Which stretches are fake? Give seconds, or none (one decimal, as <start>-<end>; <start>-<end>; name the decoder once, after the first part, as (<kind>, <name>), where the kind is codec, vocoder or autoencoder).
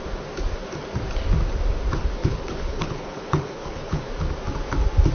2.2-4.1 (codec, HILCodec)